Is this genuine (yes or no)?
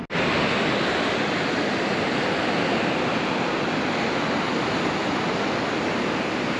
yes